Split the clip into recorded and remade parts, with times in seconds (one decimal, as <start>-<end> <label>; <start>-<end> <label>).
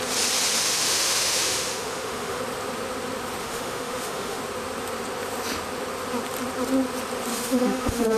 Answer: 0.0-0.6 recorded; 0.6-2.4 remade; 2.4-3.4 recorded; 3.4-4.4 remade; 4.4-7.3 recorded; 7.3-8.2 remade